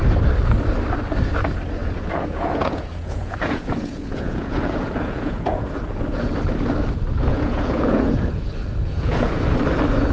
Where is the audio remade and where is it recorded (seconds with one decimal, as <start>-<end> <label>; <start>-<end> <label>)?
0.0-1.8 recorded; 1.8-5.7 remade; 5.7-7.3 recorded; 7.3-9.4 remade; 9.4-10.1 recorded